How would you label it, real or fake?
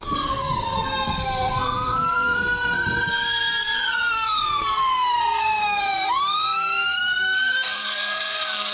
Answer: fake